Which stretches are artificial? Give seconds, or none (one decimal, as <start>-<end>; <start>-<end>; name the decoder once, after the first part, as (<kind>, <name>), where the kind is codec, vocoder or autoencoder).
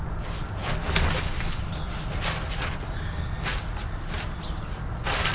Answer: none